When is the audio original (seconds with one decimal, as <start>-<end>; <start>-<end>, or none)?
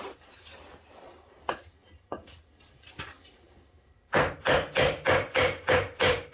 0.0-6.3